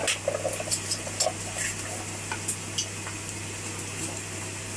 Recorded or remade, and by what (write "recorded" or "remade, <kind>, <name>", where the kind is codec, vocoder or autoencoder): recorded